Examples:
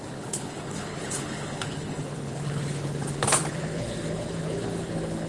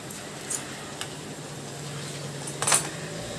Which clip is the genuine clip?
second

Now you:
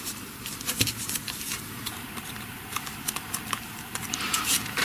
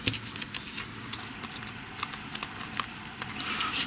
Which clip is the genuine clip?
second